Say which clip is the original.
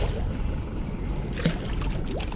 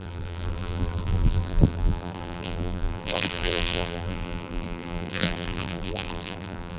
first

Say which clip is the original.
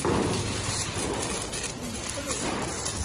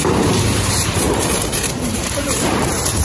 first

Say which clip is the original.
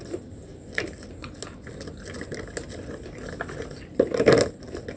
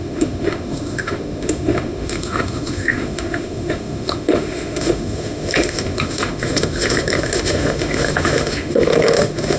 first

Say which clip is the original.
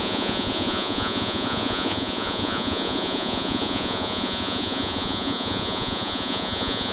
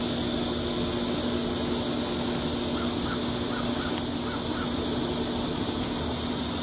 second